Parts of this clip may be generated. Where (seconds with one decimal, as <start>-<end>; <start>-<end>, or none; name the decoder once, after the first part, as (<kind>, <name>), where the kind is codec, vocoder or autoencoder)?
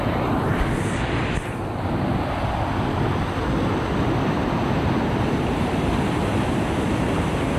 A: 0.0-0.5 (vocoder, BigVGAN v2); 4.2-6.3; 6.9-7.6